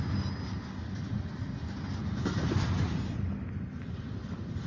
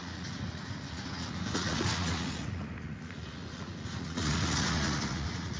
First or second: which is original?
first